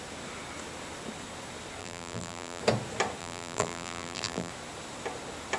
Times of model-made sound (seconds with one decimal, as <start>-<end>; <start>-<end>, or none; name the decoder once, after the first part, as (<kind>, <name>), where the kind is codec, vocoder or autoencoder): 1.8-2.6 (vocoder, BigVGAN v2); 3.2-4.5